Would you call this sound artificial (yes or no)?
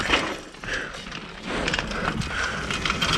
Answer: no